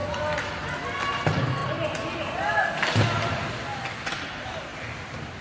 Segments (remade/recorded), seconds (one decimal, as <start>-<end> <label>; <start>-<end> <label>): 0.0-5.4 recorded